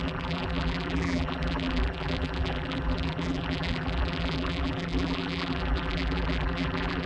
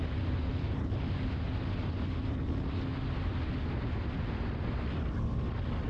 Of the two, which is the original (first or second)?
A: second